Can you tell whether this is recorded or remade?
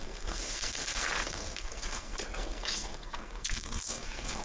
remade